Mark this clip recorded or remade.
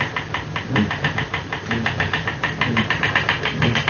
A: recorded